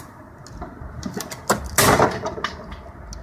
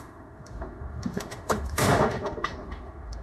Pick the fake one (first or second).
second